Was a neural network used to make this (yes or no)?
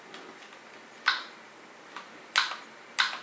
no